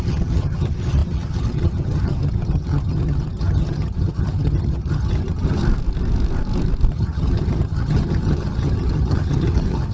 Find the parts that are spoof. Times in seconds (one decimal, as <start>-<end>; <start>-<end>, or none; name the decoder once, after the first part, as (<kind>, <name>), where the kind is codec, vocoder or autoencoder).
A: 0.0-5.6 (vocoder, HiFi-GAN); 6.9-9.9